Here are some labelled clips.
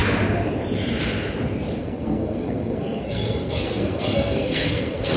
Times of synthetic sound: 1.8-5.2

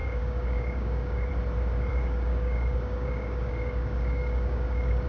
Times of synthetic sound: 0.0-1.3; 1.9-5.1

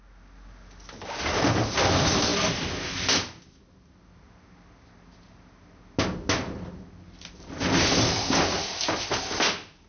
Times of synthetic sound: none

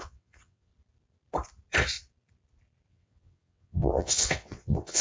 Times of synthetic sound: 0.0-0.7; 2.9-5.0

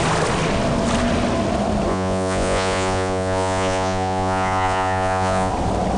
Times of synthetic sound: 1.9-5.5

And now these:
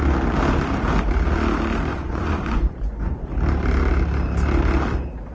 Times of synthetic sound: 1.9-3.3